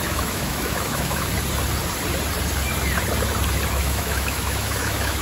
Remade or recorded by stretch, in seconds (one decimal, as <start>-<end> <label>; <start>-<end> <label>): 0.0-1.3 remade; 1.3-3.7 recorded; 3.7-5.2 remade